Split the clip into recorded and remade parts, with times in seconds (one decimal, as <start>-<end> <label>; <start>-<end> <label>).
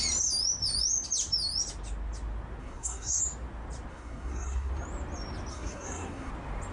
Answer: 0.0-2.6 recorded; 2.6-3.2 remade; 3.2-3.9 recorded; 3.9-4.7 remade; 4.7-5.5 recorded; 5.5-6.3 remade; 6.3-6.7 recorded